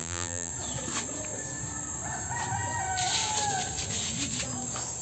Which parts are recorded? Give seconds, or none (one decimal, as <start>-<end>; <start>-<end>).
0.5-5.0